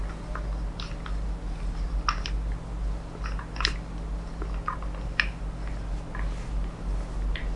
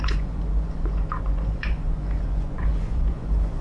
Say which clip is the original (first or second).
first